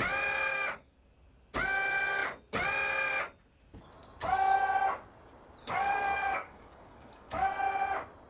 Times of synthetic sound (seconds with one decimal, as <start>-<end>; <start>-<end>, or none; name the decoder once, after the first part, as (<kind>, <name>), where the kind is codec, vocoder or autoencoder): 0.5-1.1 (codec, DAC); 5.6-7.6